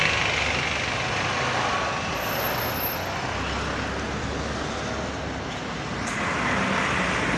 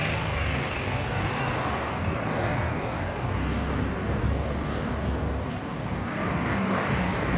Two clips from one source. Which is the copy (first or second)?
second